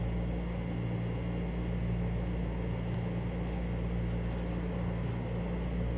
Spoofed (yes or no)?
no